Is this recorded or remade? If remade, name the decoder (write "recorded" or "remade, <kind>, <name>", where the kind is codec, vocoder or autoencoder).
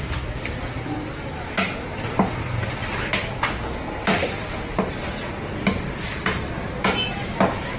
recorded